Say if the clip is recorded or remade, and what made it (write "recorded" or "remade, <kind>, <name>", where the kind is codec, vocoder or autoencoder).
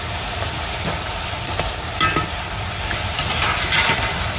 recorded